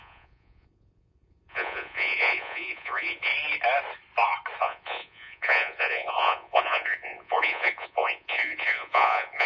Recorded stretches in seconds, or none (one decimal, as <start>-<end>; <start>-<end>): 3.3-4.6